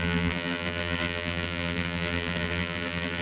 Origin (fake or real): fake